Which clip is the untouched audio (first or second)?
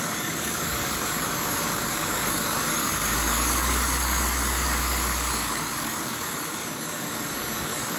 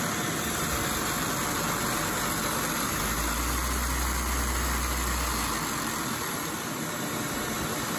second